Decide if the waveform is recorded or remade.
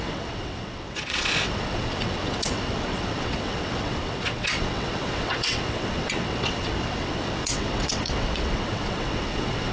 remade